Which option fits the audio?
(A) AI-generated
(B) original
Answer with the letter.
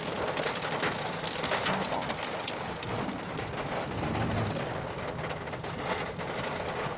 B